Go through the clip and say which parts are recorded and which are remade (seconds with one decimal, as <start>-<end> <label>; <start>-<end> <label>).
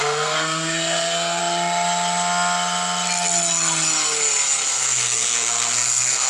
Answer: 0.0-1.4 remade; 1.4-4.7 recorded; 4.7-6.3 remade